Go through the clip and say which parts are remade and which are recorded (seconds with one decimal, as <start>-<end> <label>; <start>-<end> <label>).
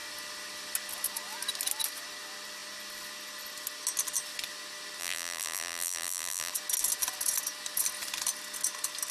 0.0-5.0 recorded; 5.0-6.5 remade; 6.5-9.1 recorded